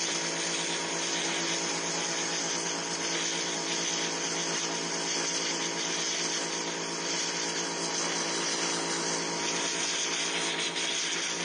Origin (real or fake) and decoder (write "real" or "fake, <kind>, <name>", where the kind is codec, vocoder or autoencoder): real